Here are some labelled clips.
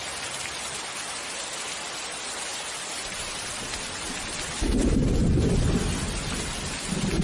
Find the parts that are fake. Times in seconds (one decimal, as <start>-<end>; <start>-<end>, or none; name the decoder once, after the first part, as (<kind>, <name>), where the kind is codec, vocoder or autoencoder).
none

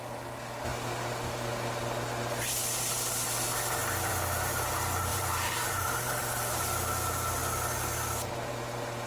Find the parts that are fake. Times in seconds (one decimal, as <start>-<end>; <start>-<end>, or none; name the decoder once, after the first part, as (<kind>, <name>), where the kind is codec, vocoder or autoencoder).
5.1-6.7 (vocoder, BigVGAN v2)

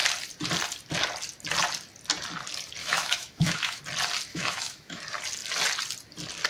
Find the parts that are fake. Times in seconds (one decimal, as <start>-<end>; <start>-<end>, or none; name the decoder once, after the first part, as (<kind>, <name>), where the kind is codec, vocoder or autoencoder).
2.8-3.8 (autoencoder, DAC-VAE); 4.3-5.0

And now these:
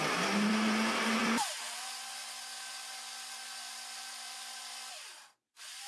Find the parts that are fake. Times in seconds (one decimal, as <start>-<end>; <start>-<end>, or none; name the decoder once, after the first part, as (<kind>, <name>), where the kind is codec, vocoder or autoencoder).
0.0-5.9 (vocoder, BigVGAN v2)

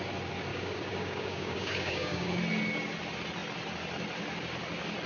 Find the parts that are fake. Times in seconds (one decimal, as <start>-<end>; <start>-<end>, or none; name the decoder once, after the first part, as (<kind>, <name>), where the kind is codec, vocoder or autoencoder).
0.5-2.4 (codec, DAC)